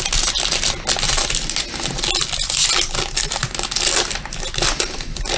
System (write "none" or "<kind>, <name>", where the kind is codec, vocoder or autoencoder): none